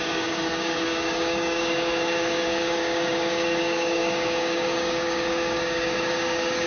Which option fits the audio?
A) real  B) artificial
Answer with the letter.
B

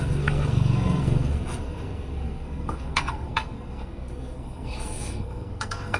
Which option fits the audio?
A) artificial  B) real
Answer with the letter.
A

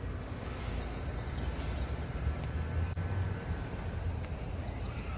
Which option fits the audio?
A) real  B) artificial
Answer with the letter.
A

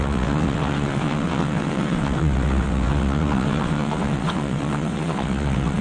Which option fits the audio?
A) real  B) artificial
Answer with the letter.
B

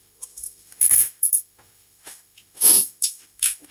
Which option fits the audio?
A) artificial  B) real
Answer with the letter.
A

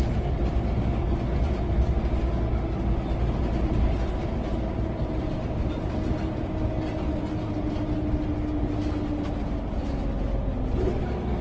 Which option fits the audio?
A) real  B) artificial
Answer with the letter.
A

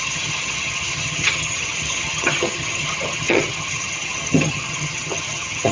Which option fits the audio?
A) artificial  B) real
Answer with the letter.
A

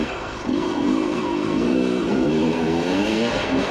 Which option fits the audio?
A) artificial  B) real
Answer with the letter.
A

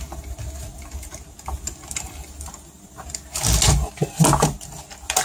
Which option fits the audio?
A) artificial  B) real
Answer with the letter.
B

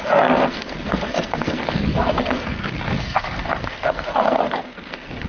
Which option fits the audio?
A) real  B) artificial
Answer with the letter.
B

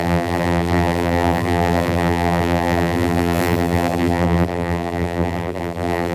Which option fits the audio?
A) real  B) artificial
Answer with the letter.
B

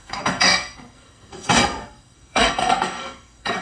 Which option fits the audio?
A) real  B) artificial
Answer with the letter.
B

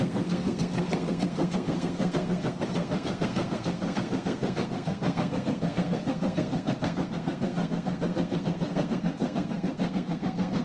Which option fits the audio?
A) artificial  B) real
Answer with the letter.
A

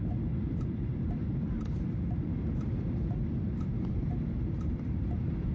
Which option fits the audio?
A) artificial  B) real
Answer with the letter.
A